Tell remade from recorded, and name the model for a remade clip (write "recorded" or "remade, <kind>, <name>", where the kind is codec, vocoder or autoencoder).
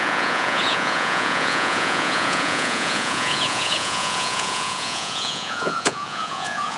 remade, vocoder, Vocos